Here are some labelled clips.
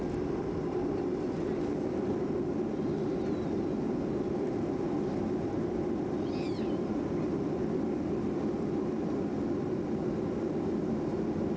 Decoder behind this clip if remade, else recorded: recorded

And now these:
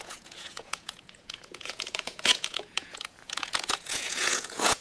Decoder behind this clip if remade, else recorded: remade, vocoder, Vocos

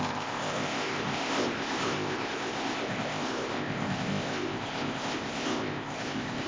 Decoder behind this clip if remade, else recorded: remade, codec, ZipCodec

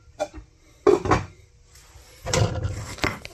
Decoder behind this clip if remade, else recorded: recorded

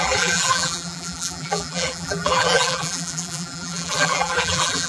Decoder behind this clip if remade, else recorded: remade, vocoder, BigVGAN v2